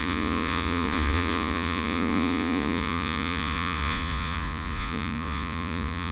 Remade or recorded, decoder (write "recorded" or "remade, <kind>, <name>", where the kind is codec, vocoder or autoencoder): remade, vocoder, Vocos